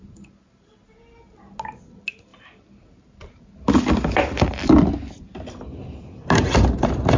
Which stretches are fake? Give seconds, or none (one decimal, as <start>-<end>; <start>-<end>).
none